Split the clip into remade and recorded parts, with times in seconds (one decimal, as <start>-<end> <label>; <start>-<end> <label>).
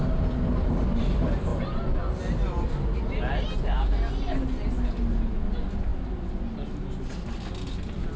0.0-8.2 recorded